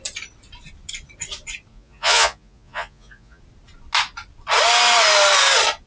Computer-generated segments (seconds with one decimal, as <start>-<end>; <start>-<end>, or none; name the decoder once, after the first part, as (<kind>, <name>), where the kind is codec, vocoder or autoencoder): 1.7-3.4 (vocoder, Vocos)